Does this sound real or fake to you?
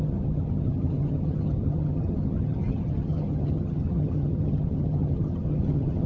fake